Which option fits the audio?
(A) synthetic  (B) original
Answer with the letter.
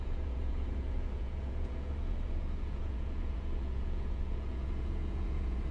A